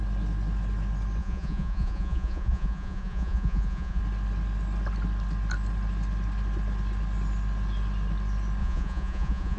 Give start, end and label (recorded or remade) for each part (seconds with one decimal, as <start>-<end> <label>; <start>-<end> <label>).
0.0-1.2 recorded; 1.2-4.0 remade; 4.0-8.6 recorded; 8.6-9.6 remade